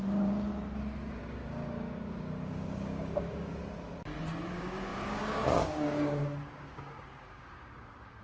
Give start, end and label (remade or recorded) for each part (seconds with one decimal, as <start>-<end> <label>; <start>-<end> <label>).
0.0-0.5 remade; 0.5-1.2 recorded; 1.2-3.5 remade; 3.5-4.5 recorded; 4.5-8.2 remade